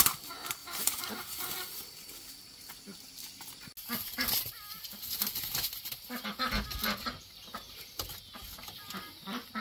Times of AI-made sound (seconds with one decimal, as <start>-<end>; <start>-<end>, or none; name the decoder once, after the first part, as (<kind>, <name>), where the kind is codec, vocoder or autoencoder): 0.6-2.4 (vocoder, BigVGAN v2)